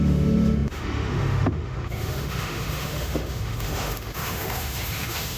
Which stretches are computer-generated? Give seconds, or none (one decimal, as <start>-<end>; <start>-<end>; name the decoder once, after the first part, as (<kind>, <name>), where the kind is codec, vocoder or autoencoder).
0.0-5.4 (autoencoder, DAC-VAE)